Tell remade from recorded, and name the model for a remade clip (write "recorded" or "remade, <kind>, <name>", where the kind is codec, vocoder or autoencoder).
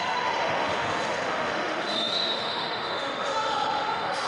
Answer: remade, autoencoder, DAC-VAE